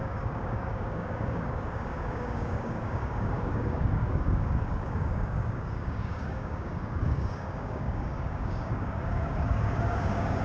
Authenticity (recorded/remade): remade